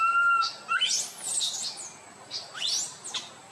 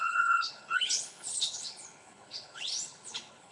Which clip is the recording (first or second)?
first